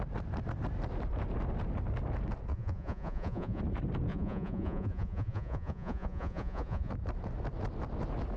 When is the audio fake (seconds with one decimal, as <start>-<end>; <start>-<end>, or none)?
2.5-3.6; 4.1-6.9